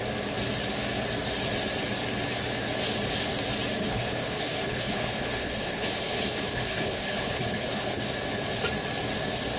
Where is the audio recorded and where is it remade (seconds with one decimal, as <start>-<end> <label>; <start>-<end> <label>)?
0.0-3.8 recorded; 3.8-8.0 remade; 8.0-9.6 recorded